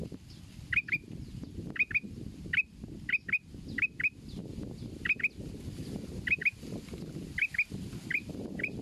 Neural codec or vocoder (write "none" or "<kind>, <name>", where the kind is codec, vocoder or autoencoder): none